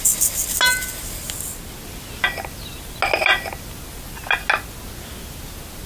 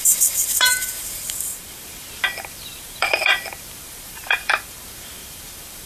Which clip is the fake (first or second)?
second